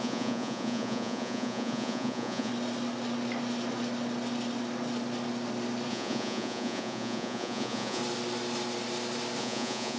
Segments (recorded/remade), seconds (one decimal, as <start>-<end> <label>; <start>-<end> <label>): 0.0-2.5 remade; 2.5-5.9 recorded; 5.9-8.0 remade; 8.0-9.4 recorded; 9.4-10.0 remade